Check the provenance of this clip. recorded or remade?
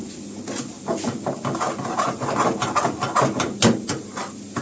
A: recorded